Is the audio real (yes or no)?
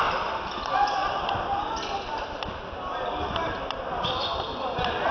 yes